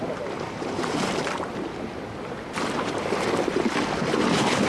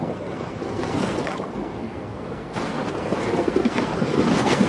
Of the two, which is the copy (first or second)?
second